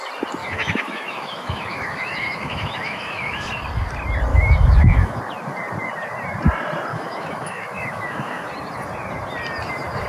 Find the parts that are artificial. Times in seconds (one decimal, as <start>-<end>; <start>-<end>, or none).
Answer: 0.4-3.5; 4.3-5.2; 6.9-8.5